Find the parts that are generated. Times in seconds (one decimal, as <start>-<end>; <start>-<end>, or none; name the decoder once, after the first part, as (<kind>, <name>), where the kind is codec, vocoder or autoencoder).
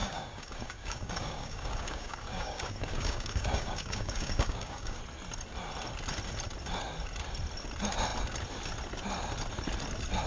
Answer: 0.0-5.0 (codec, DAC)